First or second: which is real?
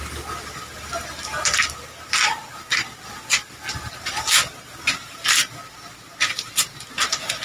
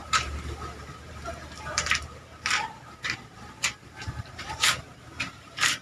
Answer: first